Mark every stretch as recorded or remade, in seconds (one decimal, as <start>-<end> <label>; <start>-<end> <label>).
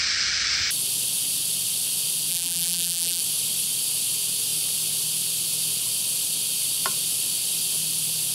0.0-2.3 recorded; 2.3-3.2 remade; 3.2-8.3 recorded